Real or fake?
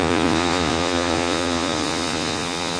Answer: fake